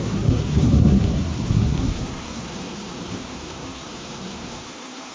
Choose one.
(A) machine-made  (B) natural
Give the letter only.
A